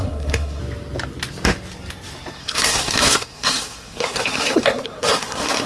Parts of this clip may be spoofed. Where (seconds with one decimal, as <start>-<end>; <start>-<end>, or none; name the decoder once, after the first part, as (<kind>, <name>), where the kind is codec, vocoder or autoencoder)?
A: 0.0-0.6 (codec, SNAC); 2.4-5.7